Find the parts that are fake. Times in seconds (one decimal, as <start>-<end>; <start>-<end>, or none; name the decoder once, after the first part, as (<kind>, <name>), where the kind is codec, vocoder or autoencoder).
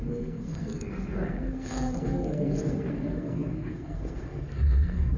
0.0-5.2 (codec, SNAC)